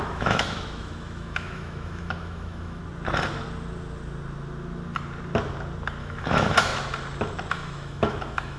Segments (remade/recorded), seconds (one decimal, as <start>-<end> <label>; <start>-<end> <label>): 0.0-2.8 remade; 2.8-6.0 recorded; 6.0-6.7 remade; 6.7-7.5 recorded; 7.5-8.6 remade